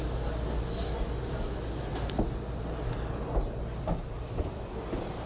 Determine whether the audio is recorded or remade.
recorded